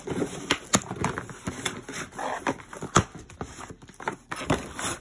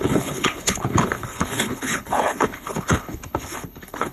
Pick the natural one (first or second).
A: first